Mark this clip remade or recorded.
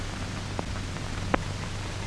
recorded